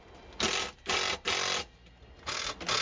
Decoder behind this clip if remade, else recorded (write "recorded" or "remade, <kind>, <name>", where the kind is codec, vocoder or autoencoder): recorded